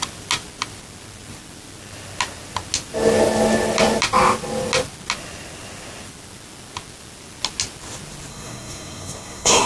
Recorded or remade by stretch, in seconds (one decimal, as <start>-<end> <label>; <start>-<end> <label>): 0.0-8.3 recorded; 8.3-9.7 remade